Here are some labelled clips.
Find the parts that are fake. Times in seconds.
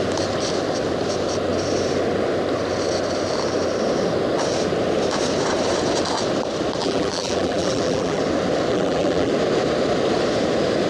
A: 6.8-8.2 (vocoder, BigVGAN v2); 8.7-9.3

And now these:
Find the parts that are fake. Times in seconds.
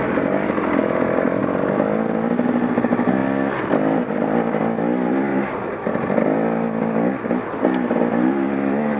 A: 5.3-5.9 (vocoder, BigVGAN v2)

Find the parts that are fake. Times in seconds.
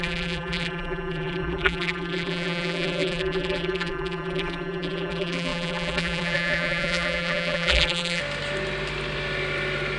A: 0.0-8.2 (vocoder, BigVGAN v2)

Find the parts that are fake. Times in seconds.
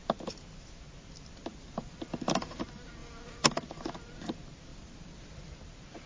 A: 1.5-2.1 (vocoder, BigVGAN v2); 3.0-3.6; 4.7-5.3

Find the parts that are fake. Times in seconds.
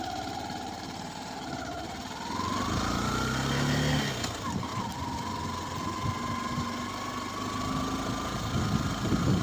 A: 0.0-4.7 (vocoder, BigVGAN v2); 8.9-9.4